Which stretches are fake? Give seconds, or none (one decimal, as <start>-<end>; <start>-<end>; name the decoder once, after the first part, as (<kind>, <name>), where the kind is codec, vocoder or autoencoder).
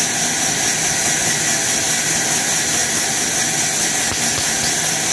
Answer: none